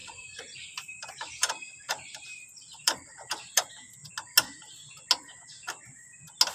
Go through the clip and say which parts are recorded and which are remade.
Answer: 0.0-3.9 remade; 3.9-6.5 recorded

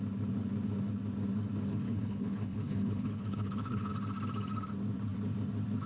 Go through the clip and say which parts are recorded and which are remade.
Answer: 0.0-1.7 recorded; 1.7-3.9 remade; 3.9-5.9 recorded

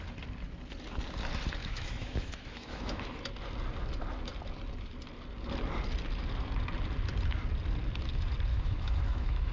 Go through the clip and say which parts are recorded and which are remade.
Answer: 0.0-1.6 recorded; 1.6-3.2 remade; 3.2-8.5 recorded; 8.5-9.5 remade

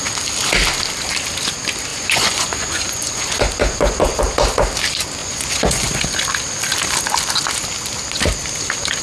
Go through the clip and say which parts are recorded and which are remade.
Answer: 0.0-1.9 recorded; 1.9-4.2 remade; 4.2-5.2 recorded; 5.2-6.0 remade; 6.0-9.0 recorded

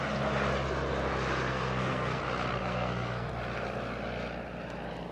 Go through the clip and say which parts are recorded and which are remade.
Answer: 0.0-1.5 recorded; 1.5-2.2 remade; 2.2-2.6 recorded; 2.6-3.3 remade; 3.3-5.1 recorded